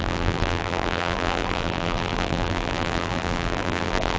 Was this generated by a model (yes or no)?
yes